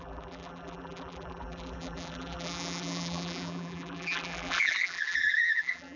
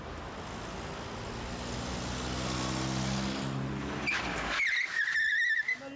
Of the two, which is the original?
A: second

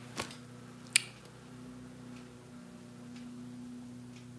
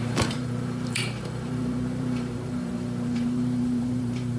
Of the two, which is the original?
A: first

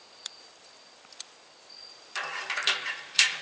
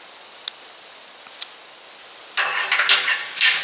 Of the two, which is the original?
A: second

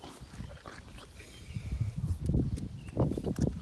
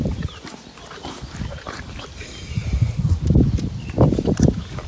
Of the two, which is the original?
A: first